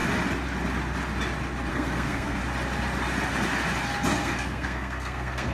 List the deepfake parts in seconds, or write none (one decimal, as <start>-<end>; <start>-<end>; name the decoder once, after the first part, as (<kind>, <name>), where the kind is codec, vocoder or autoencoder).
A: 1.7-2.4 (codec, SNAC); 4.2-5.5